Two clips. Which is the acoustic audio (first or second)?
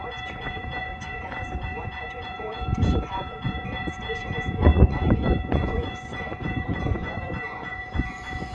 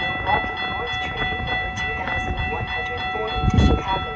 second